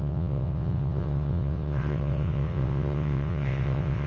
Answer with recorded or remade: remade